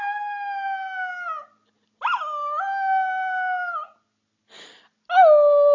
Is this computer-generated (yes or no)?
no